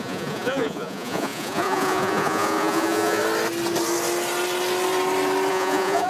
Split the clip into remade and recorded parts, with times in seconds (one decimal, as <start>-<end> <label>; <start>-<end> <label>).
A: 0.0-3.2 remade; 3.2-5.5 recorded; 5.5-6.1 remade